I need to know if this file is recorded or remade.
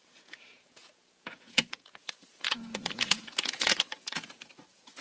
remade